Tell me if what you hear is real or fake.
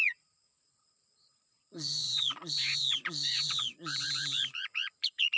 fake